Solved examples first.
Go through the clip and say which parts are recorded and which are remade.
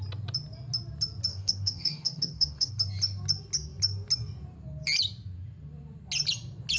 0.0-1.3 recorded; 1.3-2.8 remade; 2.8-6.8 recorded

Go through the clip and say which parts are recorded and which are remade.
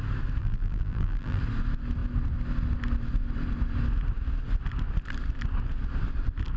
0.0-0.4 recorded; 0.4-1.4 remade; 1.4-6.6 recorded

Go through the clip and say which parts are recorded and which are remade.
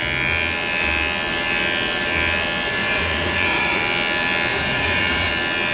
0.0-2.8 recorded; 2.8-3.8 remade; 3.8-4.5 recorded; 4.5-5.3 remade; 5.3-5.7 recorded